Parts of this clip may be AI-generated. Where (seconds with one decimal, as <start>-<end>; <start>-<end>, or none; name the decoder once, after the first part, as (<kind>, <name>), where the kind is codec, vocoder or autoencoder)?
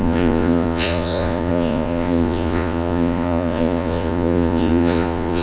0.0-5.4 (vocoder, Vocos)